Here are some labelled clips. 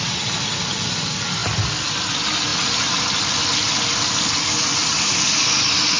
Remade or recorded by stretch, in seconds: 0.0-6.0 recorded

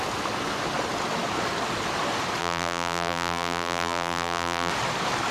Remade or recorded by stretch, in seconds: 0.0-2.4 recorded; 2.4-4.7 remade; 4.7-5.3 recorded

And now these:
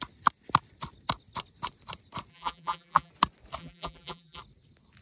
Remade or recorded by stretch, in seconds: 0.0-2.3 recorded; 2.3-3.1 remade; 3.1-3.6 recorded; 3.6-4.4 remade; 4.4-5.0 recorded